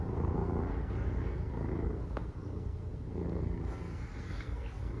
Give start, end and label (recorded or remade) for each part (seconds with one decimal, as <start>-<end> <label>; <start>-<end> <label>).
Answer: 0.0-5.0 remade